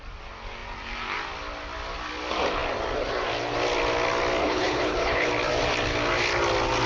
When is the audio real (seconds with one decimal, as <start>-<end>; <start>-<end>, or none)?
0.0-4.4; 5.3-6.9